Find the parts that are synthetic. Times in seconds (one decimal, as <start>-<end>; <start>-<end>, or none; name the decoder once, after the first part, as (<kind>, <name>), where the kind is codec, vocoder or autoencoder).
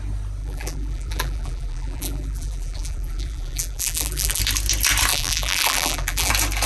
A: 0.4-4.4 (vocoder, BigVGAN v2); 5.1-6.3